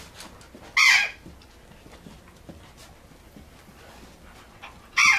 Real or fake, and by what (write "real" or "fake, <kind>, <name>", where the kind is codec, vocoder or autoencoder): real